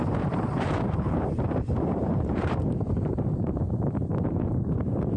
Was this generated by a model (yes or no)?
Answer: yes